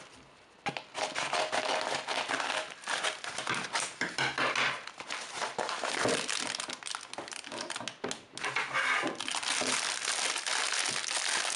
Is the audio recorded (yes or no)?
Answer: yes